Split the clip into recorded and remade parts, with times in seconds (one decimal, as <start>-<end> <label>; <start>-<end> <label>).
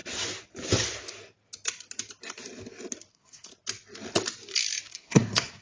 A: 0.0-3.1 recorded; 3.1-3.5 remade; 3.5-4.9 recorded; 4.9-5.6 remade